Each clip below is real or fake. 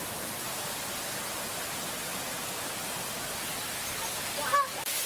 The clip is real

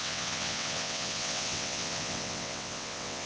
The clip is fake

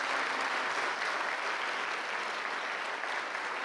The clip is real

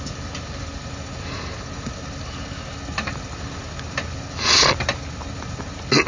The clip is real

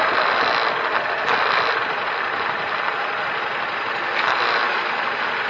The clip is real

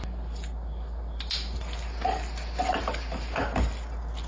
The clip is real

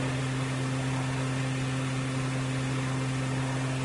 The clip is real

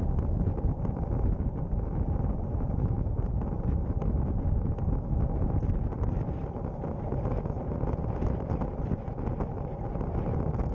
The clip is real